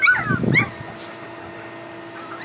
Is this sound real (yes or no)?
yes